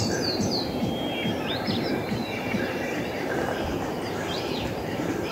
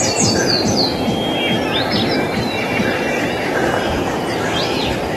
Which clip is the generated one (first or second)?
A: first